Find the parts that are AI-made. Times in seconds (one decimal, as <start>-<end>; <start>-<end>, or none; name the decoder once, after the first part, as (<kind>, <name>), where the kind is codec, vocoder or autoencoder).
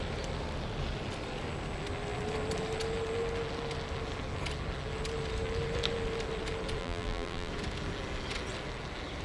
6.8-7.5 (vocoder, BigVGAN v2)